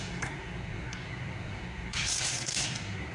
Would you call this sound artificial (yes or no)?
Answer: yes